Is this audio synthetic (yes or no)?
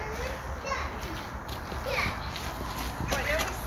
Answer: no